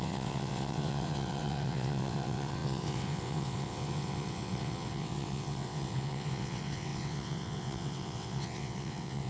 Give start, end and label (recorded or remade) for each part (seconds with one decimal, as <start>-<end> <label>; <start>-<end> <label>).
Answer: 0.0-9.3 remade